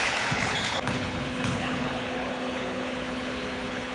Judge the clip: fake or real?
fake